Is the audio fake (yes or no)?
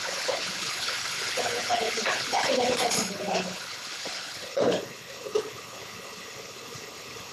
yes